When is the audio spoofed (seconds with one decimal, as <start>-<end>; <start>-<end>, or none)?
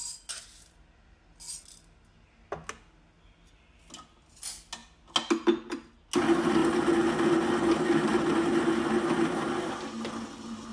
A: none